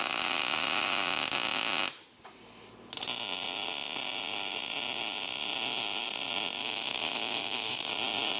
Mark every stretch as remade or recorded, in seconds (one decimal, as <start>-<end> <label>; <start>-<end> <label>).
0.0-6.6 recorded; 6.6-7.9 remade; 7.9-8.4 recorded